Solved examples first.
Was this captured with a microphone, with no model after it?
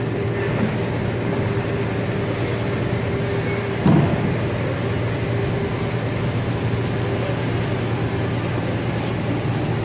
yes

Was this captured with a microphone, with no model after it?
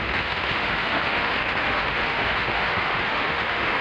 no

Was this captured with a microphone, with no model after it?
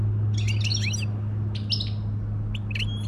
yes